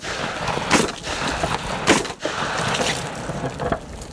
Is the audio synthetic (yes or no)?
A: no